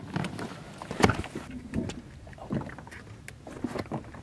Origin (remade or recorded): recorded